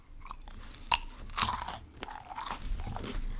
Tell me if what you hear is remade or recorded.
recorded